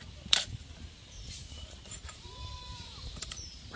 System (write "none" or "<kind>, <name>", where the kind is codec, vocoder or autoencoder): vocoder, BigVGAN v2